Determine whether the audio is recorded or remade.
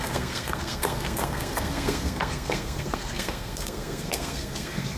remade